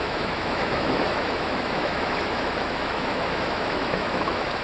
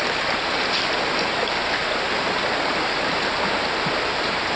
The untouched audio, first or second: second